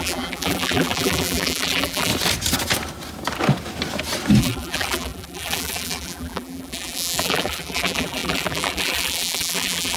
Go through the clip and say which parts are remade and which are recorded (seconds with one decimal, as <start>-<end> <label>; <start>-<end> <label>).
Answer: 0.0-2.1 remade; 2.1-4.4 recorded; 4.4-10.0 remade